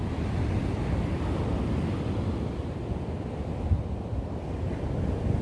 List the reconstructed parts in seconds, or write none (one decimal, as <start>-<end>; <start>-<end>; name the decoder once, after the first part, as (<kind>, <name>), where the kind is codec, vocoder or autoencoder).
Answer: none